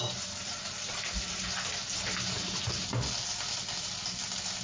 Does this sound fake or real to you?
real